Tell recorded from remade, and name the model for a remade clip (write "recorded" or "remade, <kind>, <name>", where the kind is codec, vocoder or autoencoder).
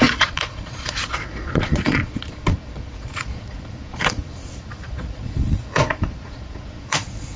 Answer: remade, vocoder, Vocos